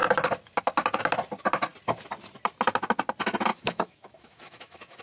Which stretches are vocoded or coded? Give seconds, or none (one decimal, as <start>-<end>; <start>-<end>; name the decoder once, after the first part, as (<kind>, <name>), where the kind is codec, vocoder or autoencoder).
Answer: 3.5-5.0 (autoencoder, DAC-VAE)